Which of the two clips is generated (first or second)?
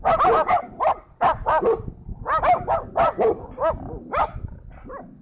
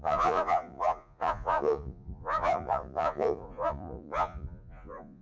second